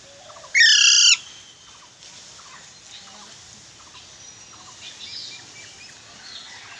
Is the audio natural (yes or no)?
yes